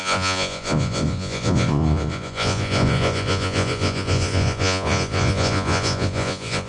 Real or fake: fake